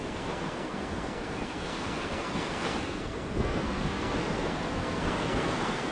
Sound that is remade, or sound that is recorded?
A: remade